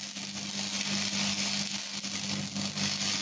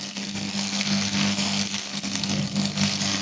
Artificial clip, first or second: second